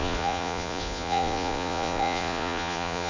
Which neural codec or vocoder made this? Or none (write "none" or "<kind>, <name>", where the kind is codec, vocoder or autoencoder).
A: vocoder, Vocos